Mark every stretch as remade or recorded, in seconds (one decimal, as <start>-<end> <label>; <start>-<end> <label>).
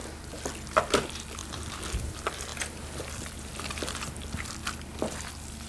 0.0-0.8 recorded; 0.8-1.4 remade; 1.4-2.1 recorded; 2.1-2.5 remade; 2.5-3.1 recorded; 3.1-4.6 remade; 4.6-5.2 recorded; 5.2-5.7 remade